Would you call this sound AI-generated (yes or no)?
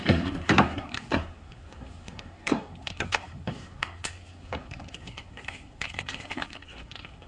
yes